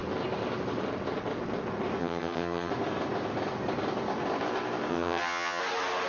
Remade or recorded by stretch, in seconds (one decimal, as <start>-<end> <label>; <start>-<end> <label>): 0.0-2.0 recorded; 2.0-2.7 remade; 2.7-4.9 recorded; 4.9-5.6 remade; 5.6-6.1 recorded